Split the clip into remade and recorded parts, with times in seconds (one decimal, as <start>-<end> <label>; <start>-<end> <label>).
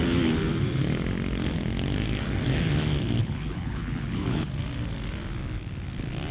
0.0-3.2 recorded; 3.2-4.5 remade; 4.5-6.3 recorded